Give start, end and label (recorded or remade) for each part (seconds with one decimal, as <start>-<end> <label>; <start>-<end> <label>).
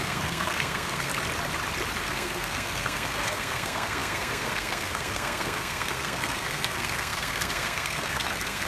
0.0-1.1 remade; 1.1-2.0 recorded; 2.0-8.7 remade